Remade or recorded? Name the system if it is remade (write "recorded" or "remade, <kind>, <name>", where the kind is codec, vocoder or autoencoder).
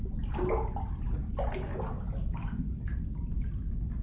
recorded